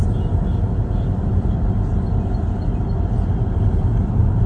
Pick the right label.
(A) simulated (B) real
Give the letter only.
B